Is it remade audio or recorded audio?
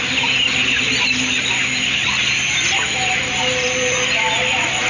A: recorded